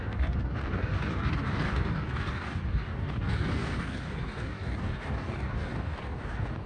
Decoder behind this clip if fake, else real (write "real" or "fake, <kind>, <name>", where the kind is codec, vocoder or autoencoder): fake, codec, DAC